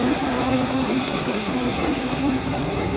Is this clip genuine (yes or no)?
no